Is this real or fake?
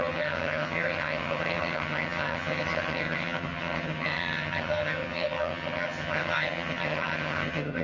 fake